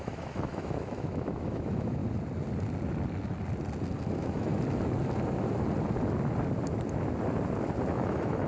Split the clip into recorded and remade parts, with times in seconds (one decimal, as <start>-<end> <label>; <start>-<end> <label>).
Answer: 0.0-2.0 remade; 2.0-4.1 recorded; 4.1-4.5 remade; 4.5-7.9 recorded; 7.9-8.5 remade